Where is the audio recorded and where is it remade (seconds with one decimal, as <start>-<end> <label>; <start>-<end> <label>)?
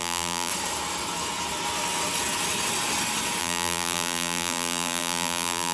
0.0-0.5 remade; 0.5-3.4 recorded; 3.4-5.7 remade